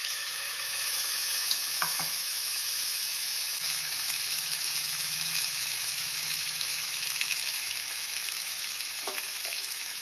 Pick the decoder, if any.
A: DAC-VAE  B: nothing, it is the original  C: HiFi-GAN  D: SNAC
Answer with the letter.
A